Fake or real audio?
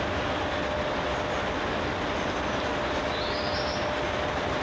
real